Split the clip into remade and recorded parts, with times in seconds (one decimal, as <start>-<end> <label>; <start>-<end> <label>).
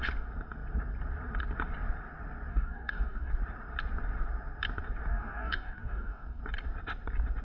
0.0-2.5 recorded; 2.5-3.3 remade; 3.3-5.1 recorded; 5.1-6.4 remade; 6.4-7.4 recorded